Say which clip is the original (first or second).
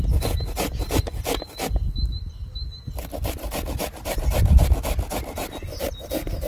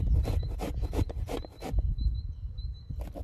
first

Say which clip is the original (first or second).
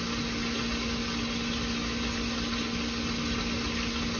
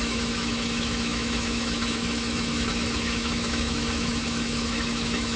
first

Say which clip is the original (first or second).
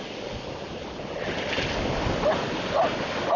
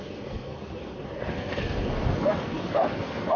first